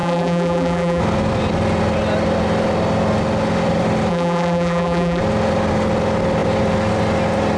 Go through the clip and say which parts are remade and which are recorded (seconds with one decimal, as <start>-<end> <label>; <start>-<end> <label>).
0.0-1.0 remade; 1.0-4.1 recorded; 4.1-5.2 remade; 5.2-7.6 recorded